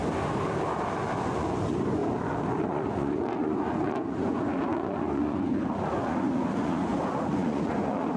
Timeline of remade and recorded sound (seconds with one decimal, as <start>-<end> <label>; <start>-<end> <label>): 0.0-1.3 recorded; 1.3-2.0 remade; 2.0-2.6 recorded; 2.6-8.2 remade

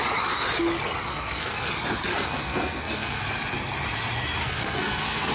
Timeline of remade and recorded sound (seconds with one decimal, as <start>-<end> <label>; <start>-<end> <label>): 0.0-1.1 recorded; 1.1-1.7 remade; 1.7-2.1 recorded; 2.1-3.2 remade; 3.2-4.4 recorded; 4.4-5.3 remade

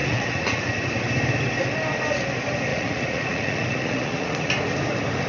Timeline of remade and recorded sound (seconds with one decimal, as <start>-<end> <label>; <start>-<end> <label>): 0.0-0.6 remade; 0.6-2.7 recorded; 2.7-4.5 remade; 4.5-5.3 recorded

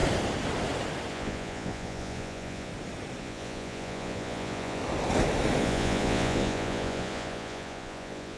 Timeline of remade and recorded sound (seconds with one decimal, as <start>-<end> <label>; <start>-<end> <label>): 0.0-1.1 recorded; 1.1-2.7 remade; 2.7-3.2 recorded; 3.2-4.8 remade; 4.8-5.6 recorded; 5.6-8.4 remade

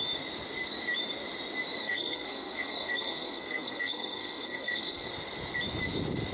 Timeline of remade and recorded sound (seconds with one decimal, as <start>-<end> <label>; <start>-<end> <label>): 0.0-1.8 recorded; 1.8-5.1 remade; 5.1-6.3 recorded

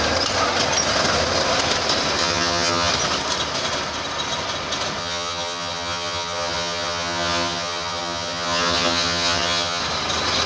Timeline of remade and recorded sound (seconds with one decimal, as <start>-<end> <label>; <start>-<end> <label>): 0.0-2.2 recorded; 2.2-2.9 remade; 2.9-5.0 recorded; 5.0-9.8 remade; 9.8-10.5 recorded